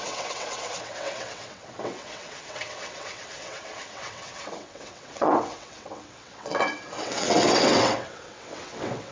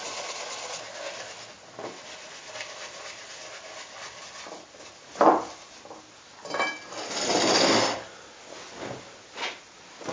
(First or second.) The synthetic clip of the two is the first